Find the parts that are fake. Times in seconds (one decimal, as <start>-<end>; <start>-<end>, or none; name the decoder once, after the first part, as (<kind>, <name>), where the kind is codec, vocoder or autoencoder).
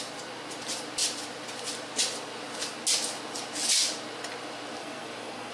4.8-5.5 (codec, SNAC)